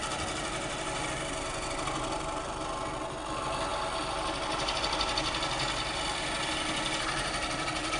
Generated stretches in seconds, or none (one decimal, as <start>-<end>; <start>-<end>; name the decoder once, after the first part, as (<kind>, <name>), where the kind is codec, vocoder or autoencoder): none